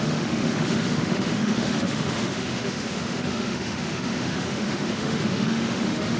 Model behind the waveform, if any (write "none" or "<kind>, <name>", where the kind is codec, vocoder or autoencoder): autoencoder, DAC-VAE